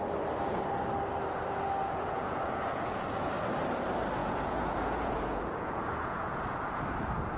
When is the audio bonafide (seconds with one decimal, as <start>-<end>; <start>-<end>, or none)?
0.0-1.8; 3.3-4.2; 6.8-7.4